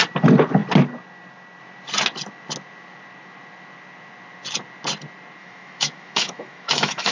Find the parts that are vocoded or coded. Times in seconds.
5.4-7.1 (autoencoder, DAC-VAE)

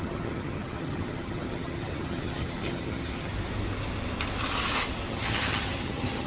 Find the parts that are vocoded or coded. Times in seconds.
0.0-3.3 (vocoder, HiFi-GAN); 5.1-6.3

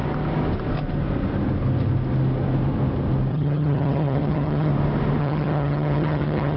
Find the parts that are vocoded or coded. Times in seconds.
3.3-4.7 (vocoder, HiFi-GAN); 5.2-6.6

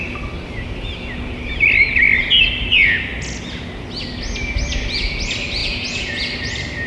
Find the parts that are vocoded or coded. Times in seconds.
5.6-6.2 (vocoder, Vocos)

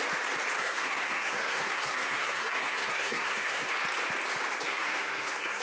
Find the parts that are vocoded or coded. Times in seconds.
0.6-3.7 (codec, SNAC); 4.7-5.6